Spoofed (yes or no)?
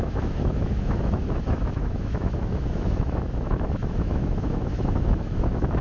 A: yes